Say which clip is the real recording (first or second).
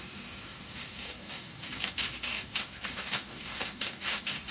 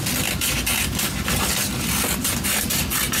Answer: second